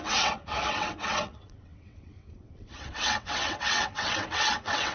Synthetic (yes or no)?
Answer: yes